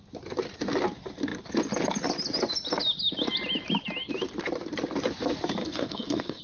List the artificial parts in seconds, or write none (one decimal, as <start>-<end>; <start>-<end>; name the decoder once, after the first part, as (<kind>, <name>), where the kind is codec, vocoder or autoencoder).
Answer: 5.6-6.4 (codec, SNAC)